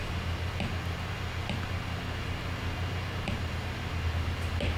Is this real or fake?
real